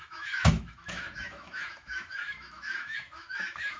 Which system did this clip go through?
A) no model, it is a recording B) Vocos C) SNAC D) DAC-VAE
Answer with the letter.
D